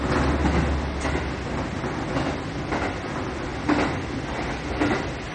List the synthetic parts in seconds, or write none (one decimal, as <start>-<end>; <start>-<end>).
none